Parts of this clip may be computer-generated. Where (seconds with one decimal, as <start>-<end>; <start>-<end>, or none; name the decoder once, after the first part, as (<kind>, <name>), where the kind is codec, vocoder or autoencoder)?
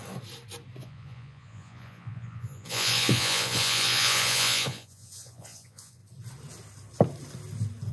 0.8-6.0 (vocoder, Vocos)